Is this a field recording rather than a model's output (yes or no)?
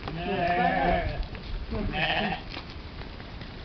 yes